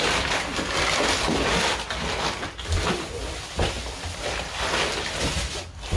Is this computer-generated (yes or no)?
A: yes